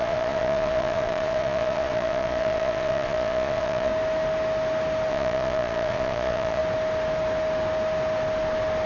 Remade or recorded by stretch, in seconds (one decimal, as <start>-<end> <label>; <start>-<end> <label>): 0.0-3.9 remade; 3.9-5.1 recorded; 5.1-6.6 remade; 6.6-8.9 recorded

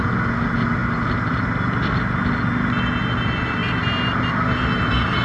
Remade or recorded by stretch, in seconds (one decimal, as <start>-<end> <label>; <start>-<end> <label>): 0.0-5.2 recorded

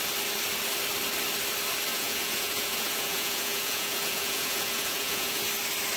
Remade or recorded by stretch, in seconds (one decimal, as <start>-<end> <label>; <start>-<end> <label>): 0.0-1.9 recorded; 1.9-5.5 remade; 5.5-6.0 recorded

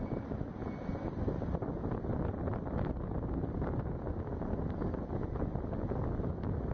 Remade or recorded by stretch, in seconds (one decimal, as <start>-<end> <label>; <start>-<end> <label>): 0.0-6.7 recorded

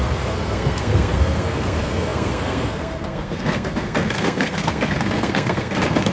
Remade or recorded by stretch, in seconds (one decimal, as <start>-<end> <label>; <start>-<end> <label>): 0.0-6.1 remade